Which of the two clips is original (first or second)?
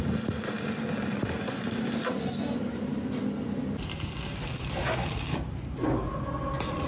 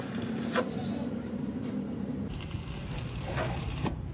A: first